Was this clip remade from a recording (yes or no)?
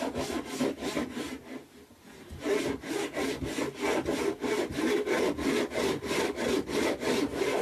no